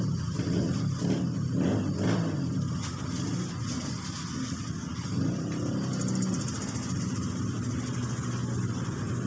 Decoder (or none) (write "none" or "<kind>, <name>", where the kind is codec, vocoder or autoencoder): none